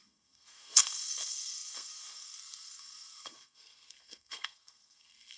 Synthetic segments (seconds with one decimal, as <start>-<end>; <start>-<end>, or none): 0.0-5.4